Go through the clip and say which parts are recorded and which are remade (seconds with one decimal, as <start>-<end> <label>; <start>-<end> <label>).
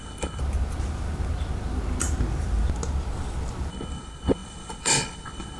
0.0-0.4 remade; 0.4-3.7 recorded; 3.7-5.6 remade